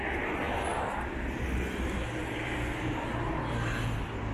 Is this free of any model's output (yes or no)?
yes